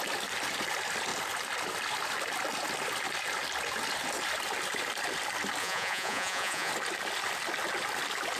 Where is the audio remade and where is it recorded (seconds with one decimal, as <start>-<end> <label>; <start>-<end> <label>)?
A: 0.0-5.6 recorded; 5.6-6.7 remade; 6.7-8.4 recorded